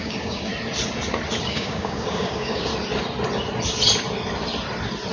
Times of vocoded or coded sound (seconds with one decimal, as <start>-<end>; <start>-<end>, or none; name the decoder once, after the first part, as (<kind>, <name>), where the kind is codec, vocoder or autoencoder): 0.0-0.5 (codec, DAC); 1.4-2.7